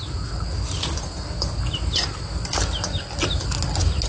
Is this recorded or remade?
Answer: recorded